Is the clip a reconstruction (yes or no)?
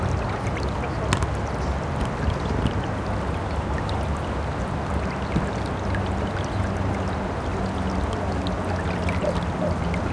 no